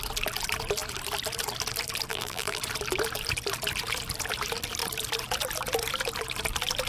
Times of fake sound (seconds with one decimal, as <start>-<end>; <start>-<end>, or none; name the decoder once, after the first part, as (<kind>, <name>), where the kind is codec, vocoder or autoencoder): 2.1-2.6 (vocoder, BigVGAN v2)